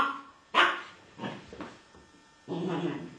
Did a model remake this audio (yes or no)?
no